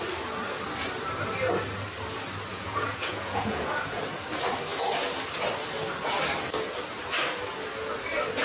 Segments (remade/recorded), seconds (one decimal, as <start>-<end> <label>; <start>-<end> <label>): 0.0-2.5 recorded; 2.5-4.0 remade; 4.0-8.4 recorded